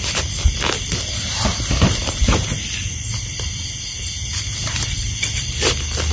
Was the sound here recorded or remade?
recorded